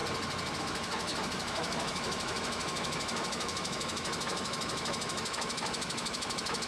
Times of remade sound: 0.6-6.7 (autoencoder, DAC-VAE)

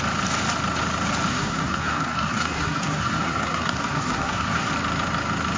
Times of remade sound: 1.3-4.7 (codec, SNAC)

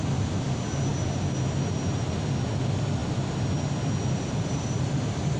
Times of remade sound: none

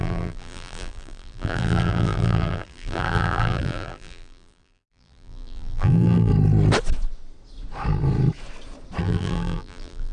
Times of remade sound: 0.0-6.3 (vocoder, BigVGAN v2); 9.0-10.1